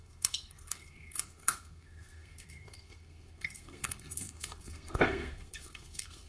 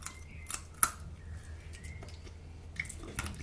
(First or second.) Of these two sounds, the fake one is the first